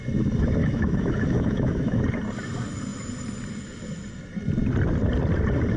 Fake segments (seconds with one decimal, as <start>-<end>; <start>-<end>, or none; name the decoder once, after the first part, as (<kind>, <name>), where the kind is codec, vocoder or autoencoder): 0.6-2.0 (autoencoder, DAC-VAE)